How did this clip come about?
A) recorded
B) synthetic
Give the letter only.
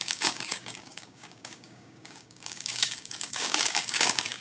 B